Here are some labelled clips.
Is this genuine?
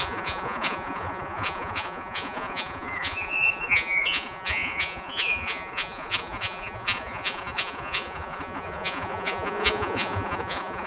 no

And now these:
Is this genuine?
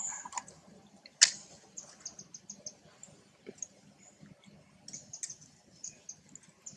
yes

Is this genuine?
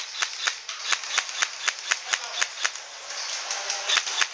yes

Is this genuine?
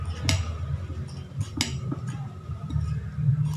yes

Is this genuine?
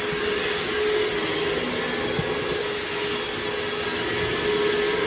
yes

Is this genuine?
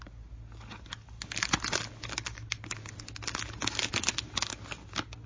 yes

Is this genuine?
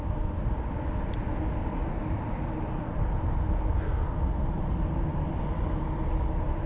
yes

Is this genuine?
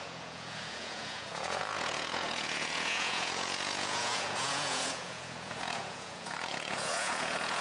no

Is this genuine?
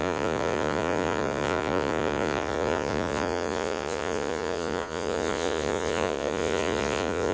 no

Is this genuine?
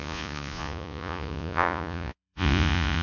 no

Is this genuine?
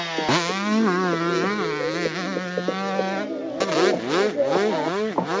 yes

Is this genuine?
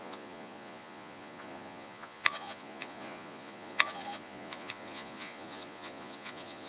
no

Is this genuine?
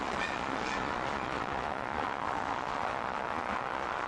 no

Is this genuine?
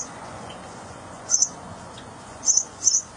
no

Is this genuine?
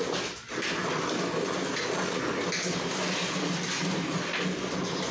yes